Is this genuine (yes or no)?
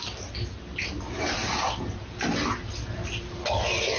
yes